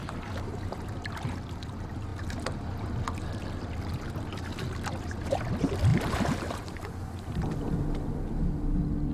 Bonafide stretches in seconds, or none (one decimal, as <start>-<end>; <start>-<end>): 1.0-5.9; 6.9-9.1